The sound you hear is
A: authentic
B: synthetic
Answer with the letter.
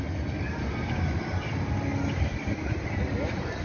A